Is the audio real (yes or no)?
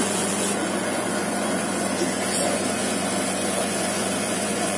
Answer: no